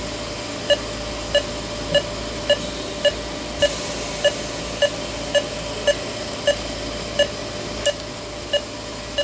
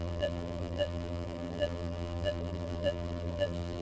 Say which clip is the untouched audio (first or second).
first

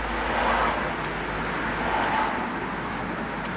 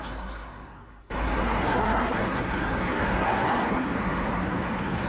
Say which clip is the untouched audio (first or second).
first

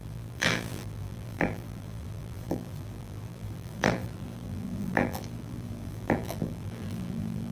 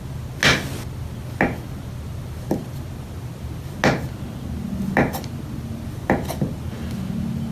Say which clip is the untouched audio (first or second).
second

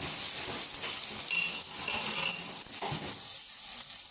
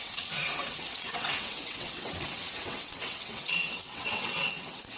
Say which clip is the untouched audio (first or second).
first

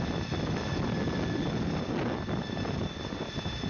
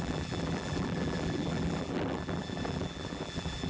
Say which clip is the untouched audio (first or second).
first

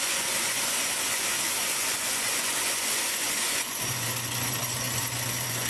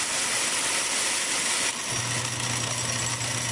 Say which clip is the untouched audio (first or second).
second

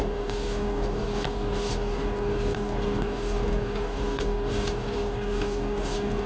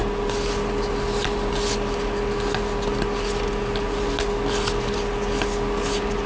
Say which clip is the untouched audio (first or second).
second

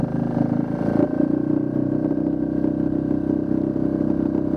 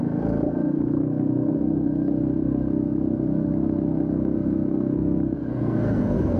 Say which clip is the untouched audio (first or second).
first